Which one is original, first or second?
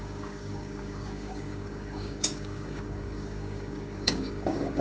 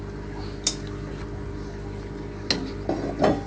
second